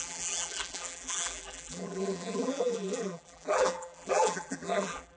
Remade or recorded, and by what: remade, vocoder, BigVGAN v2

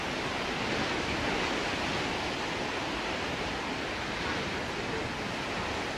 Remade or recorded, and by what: recorded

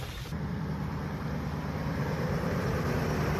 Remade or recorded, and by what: remade, vocoder, BigVGAN v2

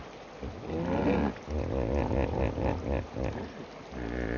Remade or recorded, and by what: recorded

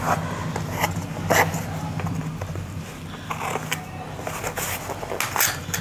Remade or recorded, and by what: recorded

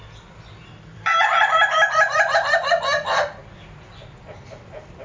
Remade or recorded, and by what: remade, vocoder, BigVGAN v2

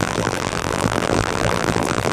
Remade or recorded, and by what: remade, vocoder, BigVGAN v2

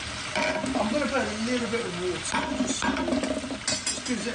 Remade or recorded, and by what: recorded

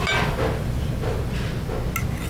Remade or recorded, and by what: recorded